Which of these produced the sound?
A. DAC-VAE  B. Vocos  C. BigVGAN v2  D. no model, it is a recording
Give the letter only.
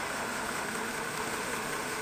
A